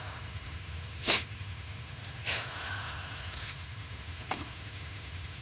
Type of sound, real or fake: fake